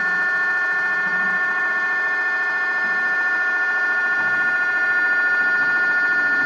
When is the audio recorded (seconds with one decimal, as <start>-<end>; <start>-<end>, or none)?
0.0-1.1; 1.7-6.5